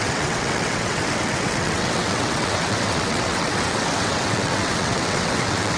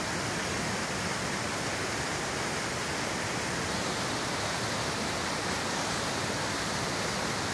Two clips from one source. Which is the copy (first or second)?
first